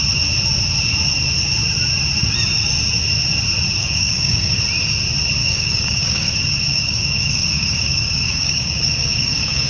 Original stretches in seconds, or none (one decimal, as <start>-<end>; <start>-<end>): 0.0-3.8; 4.6-5.4; 6.3-6.7